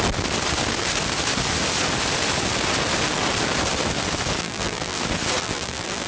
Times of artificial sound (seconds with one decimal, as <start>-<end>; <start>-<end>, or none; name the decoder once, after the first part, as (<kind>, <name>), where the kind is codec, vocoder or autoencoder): 4.4-5.0 (vocoder, BigVGAN v2); 5.4-6.1